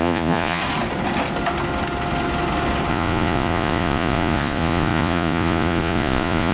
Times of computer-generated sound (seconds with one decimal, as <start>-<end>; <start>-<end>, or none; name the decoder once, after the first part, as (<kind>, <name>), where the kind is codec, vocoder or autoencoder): 0.0-0.6 (vocoder, Vocos); 2.9-6.5